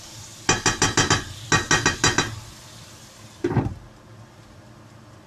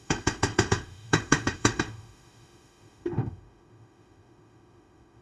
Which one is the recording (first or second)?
first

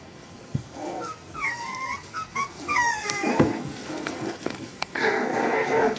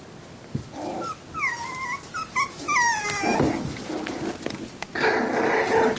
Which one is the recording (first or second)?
second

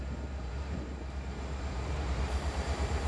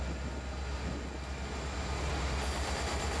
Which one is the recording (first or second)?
second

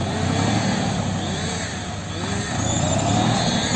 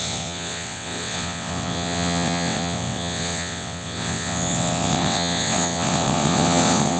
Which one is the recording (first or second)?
first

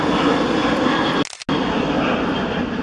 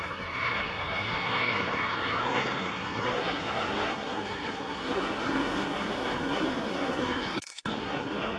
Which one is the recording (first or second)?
first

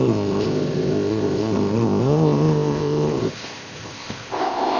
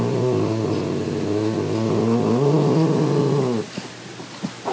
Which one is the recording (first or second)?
second